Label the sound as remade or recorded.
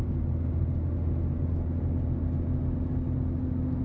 recorded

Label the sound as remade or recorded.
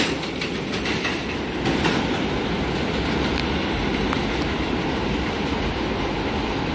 recorded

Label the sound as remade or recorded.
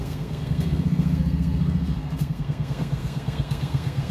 remade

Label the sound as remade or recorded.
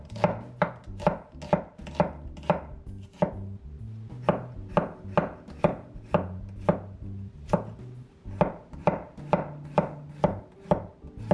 recorded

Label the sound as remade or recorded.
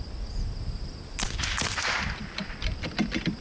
recorded